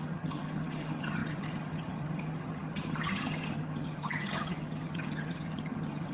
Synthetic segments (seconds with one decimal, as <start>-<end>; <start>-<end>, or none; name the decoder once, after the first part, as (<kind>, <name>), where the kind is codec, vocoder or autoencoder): 0.0-6.1 (vocoder, HiFi-GAN)